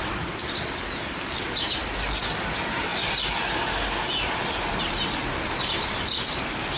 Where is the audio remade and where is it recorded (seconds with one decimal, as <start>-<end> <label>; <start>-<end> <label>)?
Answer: 0.0-6.8 recorded